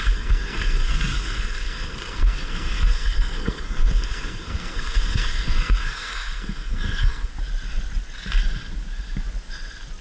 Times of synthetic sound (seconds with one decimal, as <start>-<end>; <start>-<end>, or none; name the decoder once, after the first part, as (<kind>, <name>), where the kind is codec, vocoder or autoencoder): 0.0-7.3 (codec, SNAC)

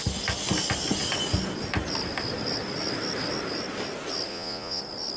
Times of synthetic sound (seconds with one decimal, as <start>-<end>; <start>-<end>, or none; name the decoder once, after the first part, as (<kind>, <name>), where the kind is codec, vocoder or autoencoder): 4.3-4.8 (vocoder, Vocos)

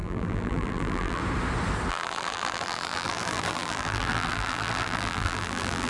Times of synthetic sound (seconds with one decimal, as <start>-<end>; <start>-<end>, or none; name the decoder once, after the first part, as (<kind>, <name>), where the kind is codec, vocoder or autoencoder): 0.0-1.2 (vocoder, BigVGAN v2); 1.9-5.9

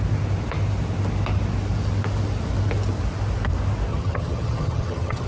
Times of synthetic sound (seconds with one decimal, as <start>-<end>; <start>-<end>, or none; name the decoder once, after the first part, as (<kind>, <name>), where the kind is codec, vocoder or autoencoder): 3.9-5.3 (vocoder, HiFi-GAN)

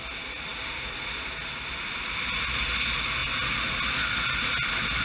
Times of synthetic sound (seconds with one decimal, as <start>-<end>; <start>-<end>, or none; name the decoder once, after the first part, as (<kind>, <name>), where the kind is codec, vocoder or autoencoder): none

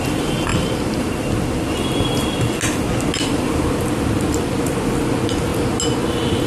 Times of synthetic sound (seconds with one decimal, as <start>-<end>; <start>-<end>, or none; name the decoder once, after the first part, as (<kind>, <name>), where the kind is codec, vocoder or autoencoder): none

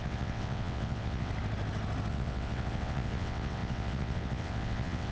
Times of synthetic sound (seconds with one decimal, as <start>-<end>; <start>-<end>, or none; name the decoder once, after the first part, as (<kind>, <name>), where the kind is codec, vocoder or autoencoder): 0.0-1.3 (vocoder, WaveNeXt); 2.1-5.1